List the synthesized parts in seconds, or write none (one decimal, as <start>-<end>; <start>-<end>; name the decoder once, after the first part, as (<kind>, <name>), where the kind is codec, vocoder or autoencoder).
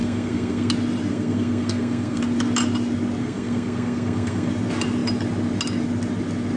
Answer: 0.0-0.7 (codec, SNAC); 1.1-2.2; 3.2-4.5